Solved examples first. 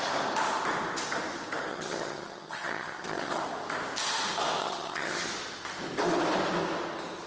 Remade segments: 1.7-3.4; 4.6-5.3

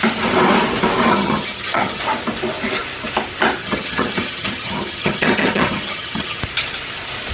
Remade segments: 1.1-2.0; 3.6-6.4

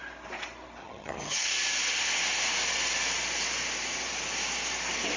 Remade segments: 0.8-1.5

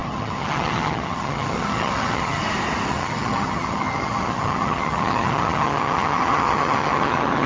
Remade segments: 0.0-2.4; 2.9-7.5

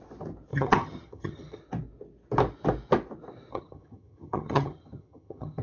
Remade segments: 0.5-1.6; 3.5-5.6